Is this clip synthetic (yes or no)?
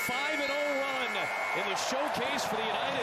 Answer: no